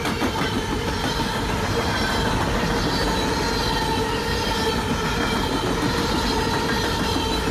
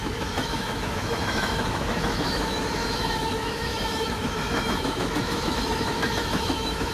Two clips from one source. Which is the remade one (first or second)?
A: second